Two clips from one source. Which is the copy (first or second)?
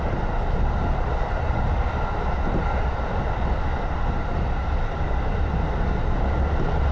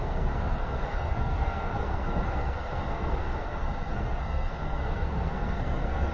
second